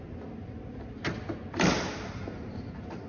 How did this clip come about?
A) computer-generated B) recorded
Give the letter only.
B